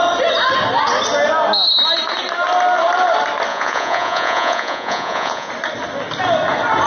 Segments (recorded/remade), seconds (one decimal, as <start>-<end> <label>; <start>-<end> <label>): 0.0-3.5 recorded; 3.5-5.5 remade; 5.5-6.9 recorded

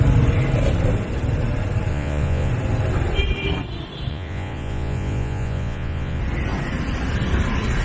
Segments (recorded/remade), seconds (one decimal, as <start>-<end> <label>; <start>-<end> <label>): 0.0-1.9 recorded; 1.9-2.5 remade; 2.5-4.1 recorded; 4.1-6.2 remade; 6.2-7.8 recorded

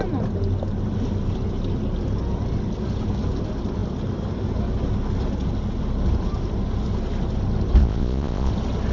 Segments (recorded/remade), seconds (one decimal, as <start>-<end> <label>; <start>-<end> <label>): 0.0-7.8 recorded; 7.8-8.5 remade; 8.5-8.9 recorded

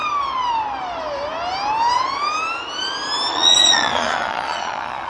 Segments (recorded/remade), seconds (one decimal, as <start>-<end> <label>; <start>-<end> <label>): 0.0-3.3 recorded; 3.3-5.1 remade

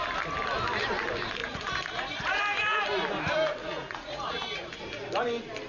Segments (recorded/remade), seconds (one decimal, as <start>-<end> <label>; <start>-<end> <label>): 0.0-1.4 recorded; 1.4-2.4 remade; 2.4-3.6 recorded; 3.6-4.7 remade; 4.7-5.7 recorded

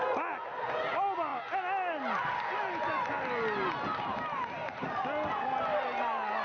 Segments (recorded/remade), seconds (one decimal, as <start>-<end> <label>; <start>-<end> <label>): 0.0-6.4 recorded

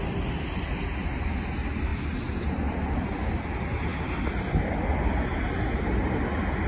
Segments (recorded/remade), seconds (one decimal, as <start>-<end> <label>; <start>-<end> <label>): 0.0-6.7 recorded